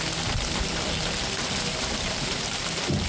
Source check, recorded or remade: recorded